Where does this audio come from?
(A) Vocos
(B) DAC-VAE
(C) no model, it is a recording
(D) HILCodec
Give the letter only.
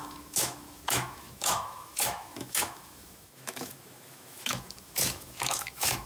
B